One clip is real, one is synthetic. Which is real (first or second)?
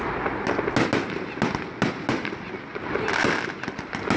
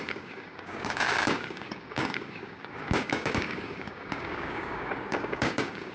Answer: first